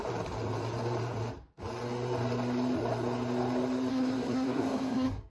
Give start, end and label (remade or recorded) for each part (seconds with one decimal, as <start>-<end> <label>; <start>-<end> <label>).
0.0-3.9 recorded; 3.9-5.3 remade